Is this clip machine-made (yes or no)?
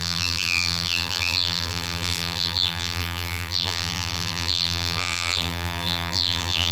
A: yes